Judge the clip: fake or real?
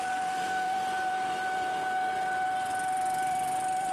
fake